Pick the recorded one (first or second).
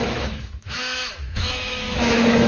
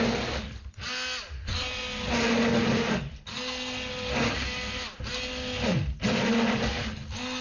second